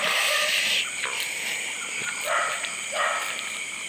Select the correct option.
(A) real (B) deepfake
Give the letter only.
B